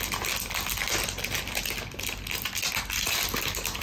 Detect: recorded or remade recorded